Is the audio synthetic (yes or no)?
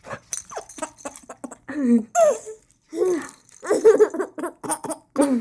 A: no